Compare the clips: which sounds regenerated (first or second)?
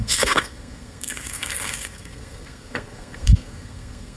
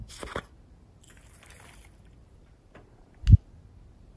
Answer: first